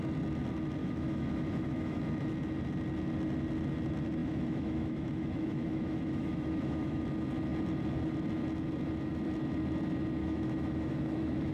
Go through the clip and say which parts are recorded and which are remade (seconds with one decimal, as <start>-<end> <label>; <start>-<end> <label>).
0.0-0.8 recorded; 0.8-2.1 remade; 2.1-4.2 recorded; 4.2-7.0 remade; 7.0-10.2 recorded; 10.2-11.5 remade